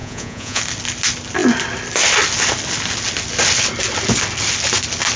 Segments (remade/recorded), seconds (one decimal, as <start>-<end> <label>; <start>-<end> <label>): 0.0-0.6 remade; 0.6-5.2 recorded